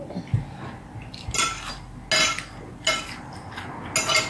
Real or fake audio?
real